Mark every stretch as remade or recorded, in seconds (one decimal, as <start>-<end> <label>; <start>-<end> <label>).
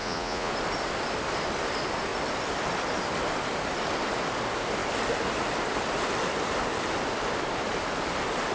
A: 0.0-0.5 remade; 0.5-8.5 recorded